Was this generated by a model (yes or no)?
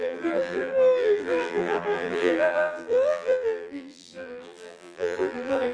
yes